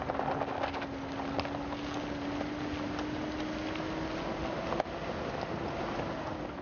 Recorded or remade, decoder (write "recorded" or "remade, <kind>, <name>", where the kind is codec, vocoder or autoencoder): recorded